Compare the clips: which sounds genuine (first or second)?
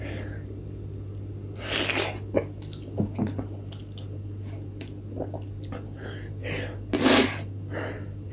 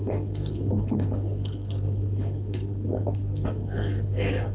first